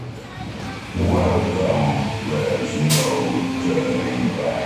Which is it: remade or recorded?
recorded